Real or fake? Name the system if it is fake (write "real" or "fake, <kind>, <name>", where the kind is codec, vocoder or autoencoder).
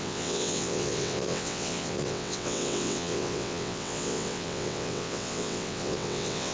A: fake, vocoder, WaveNeXt